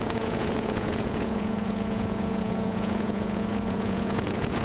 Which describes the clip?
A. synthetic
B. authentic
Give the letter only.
A